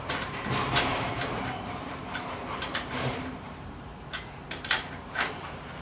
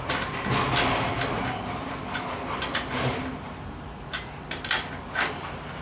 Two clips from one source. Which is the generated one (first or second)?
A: first